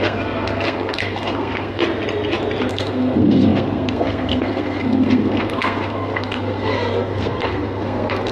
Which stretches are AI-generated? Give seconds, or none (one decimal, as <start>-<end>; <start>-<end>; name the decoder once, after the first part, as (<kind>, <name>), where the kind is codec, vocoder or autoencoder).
0.0-1.8 (codec, SNAC); 2.7-8.3